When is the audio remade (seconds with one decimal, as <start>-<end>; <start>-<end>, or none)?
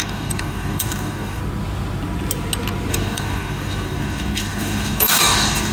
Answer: 0.0-1.4; 2.9-5.7